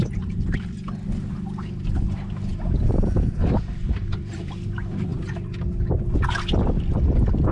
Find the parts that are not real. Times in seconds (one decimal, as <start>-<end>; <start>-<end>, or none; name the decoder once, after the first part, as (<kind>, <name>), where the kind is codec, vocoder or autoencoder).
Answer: 0.0-5.1 (vocoder, BigVGAN v2); 6.7-7.5